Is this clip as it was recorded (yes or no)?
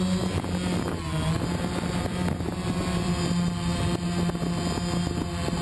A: yes